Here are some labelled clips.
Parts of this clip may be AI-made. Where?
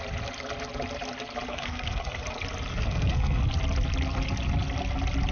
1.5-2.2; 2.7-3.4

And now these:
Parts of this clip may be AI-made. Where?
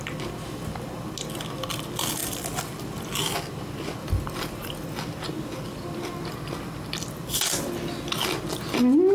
none